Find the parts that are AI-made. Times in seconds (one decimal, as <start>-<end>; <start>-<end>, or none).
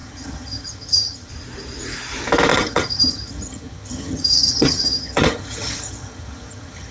0.0-1.3; 2.5-6.9